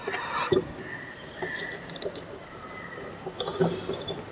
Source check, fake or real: real